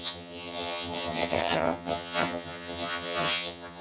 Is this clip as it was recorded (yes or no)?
no